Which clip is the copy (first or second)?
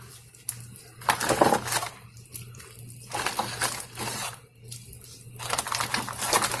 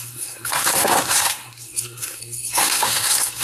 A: second